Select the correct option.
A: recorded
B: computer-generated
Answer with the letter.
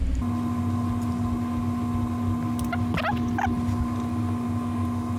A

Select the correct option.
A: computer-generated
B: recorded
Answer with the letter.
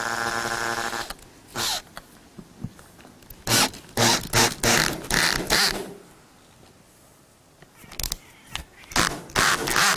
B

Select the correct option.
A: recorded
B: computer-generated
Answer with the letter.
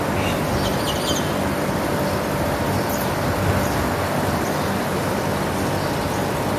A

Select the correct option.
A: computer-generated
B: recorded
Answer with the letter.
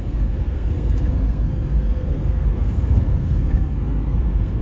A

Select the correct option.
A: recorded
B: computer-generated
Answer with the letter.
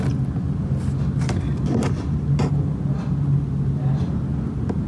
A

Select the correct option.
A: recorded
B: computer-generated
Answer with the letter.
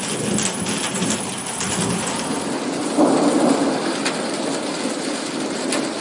A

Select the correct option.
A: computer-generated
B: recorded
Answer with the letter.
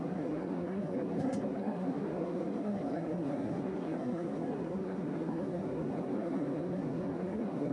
A